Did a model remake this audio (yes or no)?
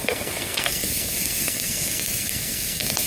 yes